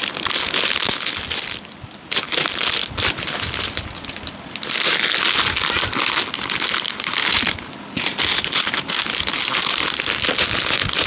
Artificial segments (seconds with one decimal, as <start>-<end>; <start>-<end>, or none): none